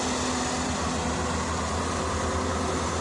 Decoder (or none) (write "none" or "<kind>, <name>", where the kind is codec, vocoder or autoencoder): none